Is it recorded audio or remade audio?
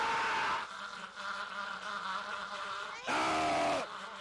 recorded